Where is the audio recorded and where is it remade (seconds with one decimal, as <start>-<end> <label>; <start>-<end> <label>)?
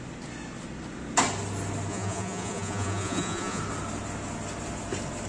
0.0-1.9 recorded; 1.9-3.6 remade; 3.6-5.3 recorded